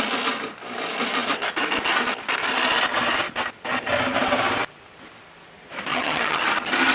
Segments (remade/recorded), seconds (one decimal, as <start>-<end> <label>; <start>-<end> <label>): 0.0-5.9 recorded; 5.9-6.4 remade; 6.4-6.9 recorded